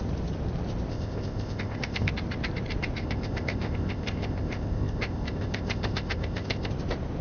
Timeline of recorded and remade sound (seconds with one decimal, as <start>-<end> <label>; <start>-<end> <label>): 0.0-0.9 recorded; 0.9-2.1 remade; 2.1-3.0 recorded; 3.0-6.7 remade; 6.7-7.2 recorded

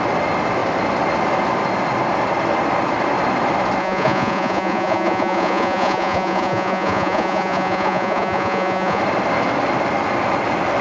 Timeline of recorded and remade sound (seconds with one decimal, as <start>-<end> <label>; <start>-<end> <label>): 0.0-3.8 recorded; 3.8-9.0 remade; 9.0-10.8 recorded